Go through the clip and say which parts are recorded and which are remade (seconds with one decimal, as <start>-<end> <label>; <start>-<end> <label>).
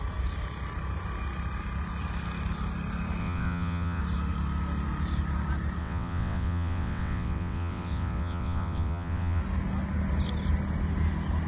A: 0.0-3.2 recorded; 3.2-4.0 remade; 4.0-5.8 recorded; 5.8-9.4 remade; 9.4-11.5 recorded